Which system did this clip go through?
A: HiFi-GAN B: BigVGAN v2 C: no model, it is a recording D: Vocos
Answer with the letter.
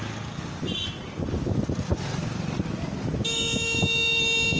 C